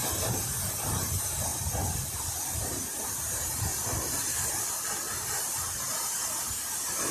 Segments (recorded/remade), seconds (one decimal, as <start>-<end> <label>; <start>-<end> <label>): 0.0-1.5 recorded; 1.5-3.3 remade; 3.3-3.7 recorded; 3.7-6.4 remade; 6.4-7.1 recorded